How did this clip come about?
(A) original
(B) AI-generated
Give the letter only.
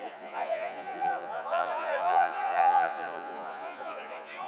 B